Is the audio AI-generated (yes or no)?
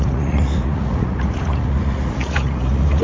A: yes